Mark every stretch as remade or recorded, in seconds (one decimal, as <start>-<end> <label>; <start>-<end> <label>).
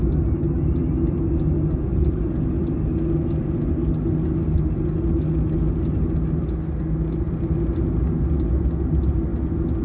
0.0-1.9 recorded; 1.9-2.5 remade; 2.5-9.8 recorded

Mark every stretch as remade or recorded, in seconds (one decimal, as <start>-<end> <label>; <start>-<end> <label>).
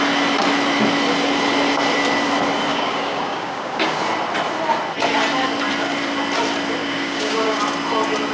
0.0-2.7 recorded; 2.7-4.0 remade; 4.0-6.8 recorded; 6.8-7.6 remade; 7.6-8.3 recorded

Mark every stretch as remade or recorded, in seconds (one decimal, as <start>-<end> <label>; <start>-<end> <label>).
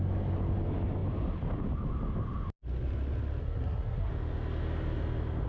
0.0-3.4 recorded; 3.4-4.1 remade; 4.1-5.5 recorded